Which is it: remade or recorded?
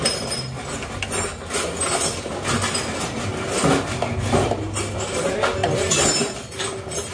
recorded